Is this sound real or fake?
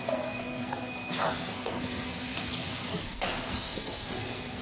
fake